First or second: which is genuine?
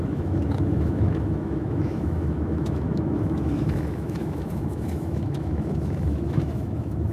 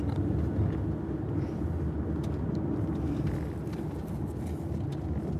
second